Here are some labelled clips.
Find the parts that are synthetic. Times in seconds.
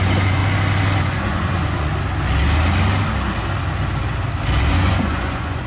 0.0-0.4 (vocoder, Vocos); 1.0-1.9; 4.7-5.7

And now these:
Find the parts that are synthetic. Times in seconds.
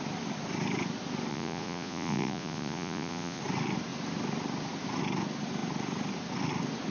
1.3-3.4 (vocoder, Vocos)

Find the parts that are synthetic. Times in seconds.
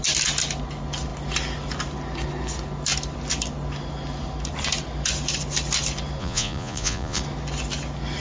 6.2-7.2 (vocoder, Vocos)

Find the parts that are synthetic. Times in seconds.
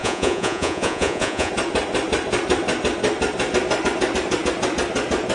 0.0-1.5 (vocoder, Vocos)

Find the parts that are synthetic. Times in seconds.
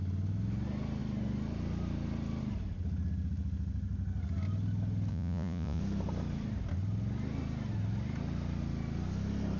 5.1-5.8 (vocoder, Vocos)